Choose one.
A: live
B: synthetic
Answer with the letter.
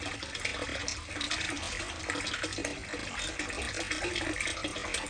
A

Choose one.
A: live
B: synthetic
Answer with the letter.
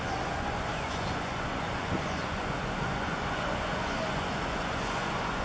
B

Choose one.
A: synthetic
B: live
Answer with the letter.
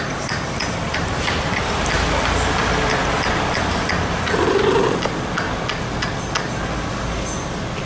B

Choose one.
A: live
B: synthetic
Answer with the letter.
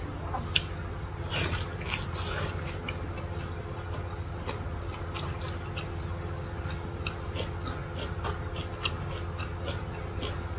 A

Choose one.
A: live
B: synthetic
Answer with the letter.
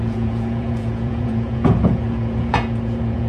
B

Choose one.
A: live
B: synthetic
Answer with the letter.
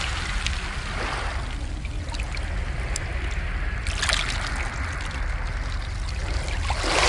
A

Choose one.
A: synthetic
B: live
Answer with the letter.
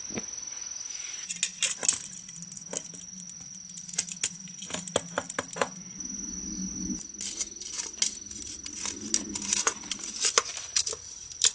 B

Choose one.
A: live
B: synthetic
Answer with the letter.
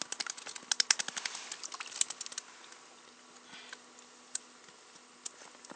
A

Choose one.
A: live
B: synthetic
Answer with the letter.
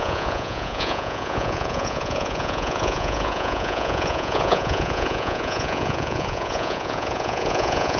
B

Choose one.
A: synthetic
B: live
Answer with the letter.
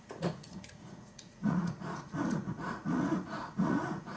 A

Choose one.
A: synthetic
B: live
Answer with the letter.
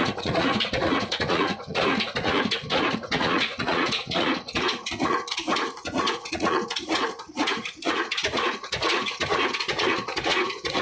A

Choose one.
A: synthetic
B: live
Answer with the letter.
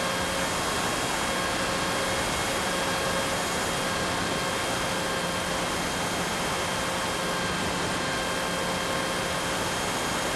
B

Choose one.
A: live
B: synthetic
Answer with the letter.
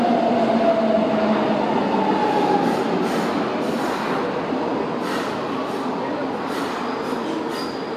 A